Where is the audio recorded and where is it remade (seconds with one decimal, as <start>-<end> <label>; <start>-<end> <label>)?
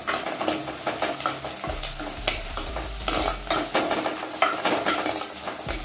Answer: 0.0-5.8 recorded